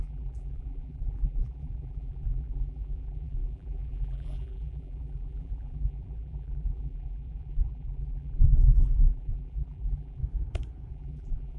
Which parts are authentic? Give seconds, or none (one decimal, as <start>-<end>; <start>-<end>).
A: 10.2-10.9